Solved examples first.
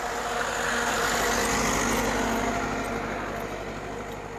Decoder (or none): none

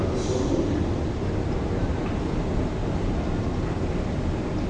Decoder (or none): none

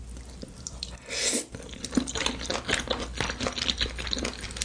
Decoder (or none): none